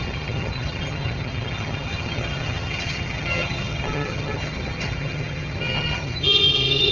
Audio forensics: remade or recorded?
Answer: remade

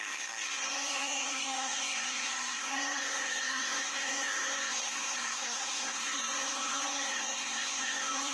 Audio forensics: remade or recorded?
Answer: remade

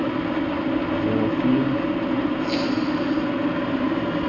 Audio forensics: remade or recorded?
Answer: recorded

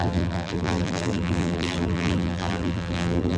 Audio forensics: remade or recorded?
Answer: remade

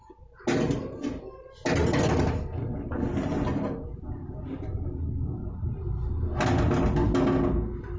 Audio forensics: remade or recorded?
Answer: recorded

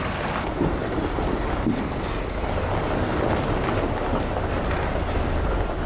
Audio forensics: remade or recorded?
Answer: recorded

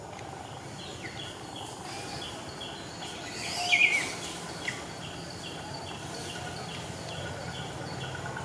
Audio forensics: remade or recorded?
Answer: recorded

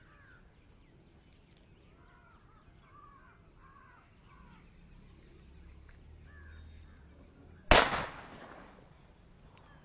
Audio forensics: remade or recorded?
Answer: recorded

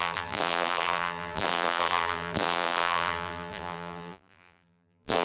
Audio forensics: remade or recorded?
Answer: remade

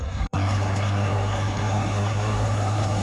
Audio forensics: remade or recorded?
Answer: remade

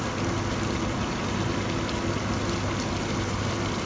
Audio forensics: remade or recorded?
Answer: recorded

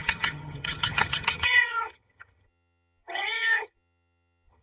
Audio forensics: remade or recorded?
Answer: remade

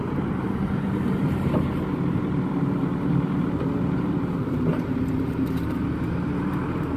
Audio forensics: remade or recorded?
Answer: remade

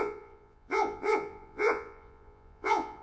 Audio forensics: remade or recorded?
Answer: remade